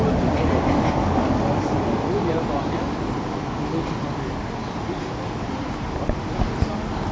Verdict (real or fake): real